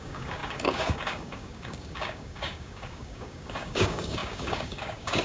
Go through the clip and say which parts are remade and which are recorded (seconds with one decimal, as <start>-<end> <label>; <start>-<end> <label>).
0.0-5.2 remade